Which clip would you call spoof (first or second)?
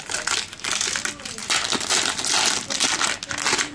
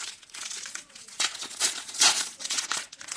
second